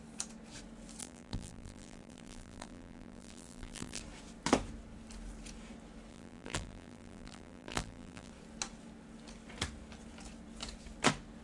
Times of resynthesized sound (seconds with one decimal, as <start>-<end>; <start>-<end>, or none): 1.0-4.0; 6.1-8.3